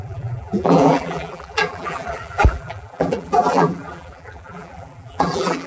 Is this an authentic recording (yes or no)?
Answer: no